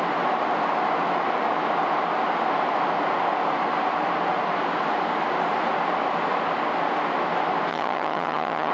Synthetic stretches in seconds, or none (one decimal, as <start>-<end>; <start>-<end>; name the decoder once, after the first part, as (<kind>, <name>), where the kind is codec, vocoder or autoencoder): 7.7-8.7 (vocoder, HiFi-GAN)